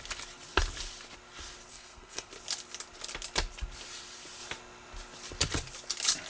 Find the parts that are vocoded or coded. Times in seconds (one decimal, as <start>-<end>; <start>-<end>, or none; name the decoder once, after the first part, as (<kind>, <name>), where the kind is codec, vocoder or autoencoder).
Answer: 1.7-2.3 (codec, SNAC)